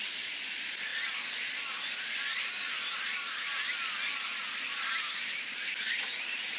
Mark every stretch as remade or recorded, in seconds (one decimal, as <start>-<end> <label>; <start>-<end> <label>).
0.0-6.6 recorded